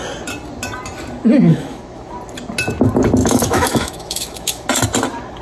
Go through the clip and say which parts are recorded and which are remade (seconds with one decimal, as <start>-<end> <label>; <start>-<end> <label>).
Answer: 0.0-1.5 recorded; 1.5-2.1 remade; 2.1-3.2 recorded; 3.2-4.7 remade; 4.7-5.4 recorded